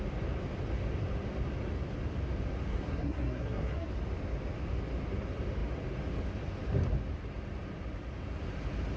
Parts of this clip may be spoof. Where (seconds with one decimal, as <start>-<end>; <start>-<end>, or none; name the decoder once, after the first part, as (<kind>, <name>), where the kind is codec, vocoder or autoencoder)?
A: 2.7-3.9 (codec, SNAC)